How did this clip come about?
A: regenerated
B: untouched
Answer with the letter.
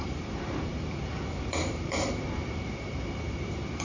A